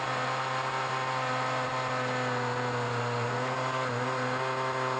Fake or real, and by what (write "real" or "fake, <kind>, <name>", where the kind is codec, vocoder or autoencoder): real